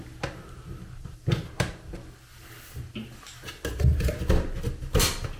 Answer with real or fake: real